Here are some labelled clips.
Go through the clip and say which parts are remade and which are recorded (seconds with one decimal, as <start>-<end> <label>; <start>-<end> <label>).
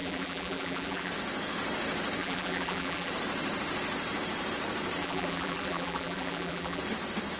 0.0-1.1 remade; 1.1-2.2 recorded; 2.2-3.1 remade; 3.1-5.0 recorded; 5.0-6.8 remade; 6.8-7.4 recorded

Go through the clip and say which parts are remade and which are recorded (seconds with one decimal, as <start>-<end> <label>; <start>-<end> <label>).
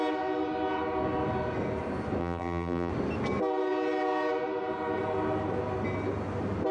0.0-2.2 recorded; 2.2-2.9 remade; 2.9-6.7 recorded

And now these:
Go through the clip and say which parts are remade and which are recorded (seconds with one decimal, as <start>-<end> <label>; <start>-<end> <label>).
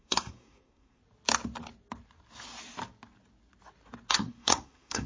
0.0-1.0 remade; 1.0-4.1 recorded; 4.1-5.1 remade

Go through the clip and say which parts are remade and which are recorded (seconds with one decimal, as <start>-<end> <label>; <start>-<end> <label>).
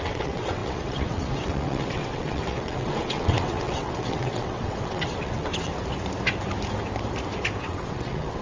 0.0-5.7 remade; 5.7-7.6 recorded; 7.6-8.4 remade